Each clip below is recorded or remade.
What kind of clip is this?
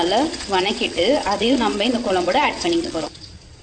remade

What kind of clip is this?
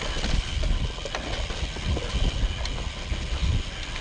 recorded